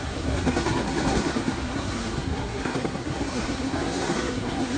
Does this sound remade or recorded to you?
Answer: remade